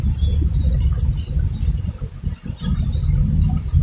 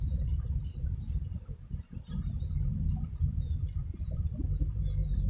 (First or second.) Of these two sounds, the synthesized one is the second